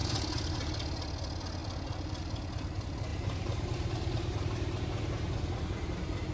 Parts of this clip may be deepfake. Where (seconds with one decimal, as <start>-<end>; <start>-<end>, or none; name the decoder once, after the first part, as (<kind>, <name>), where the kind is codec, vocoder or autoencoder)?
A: 0.0-0.7 (vocoder, BigVGAN v2); 3.1-4.4